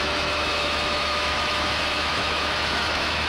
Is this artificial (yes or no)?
yes